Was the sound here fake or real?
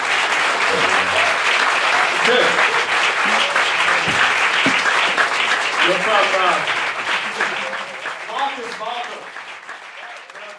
real